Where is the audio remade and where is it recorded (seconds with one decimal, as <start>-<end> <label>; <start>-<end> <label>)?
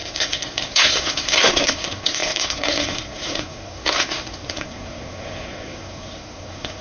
0.0-6.8 remade